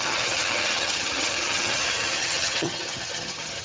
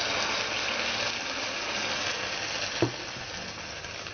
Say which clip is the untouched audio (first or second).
second